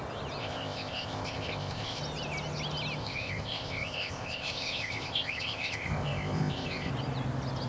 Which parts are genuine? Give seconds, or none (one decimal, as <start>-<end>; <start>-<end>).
0.0-0.4; 2.0-3.0; 6.9-7.7